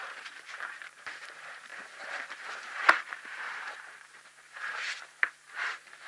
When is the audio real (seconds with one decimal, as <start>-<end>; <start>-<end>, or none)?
none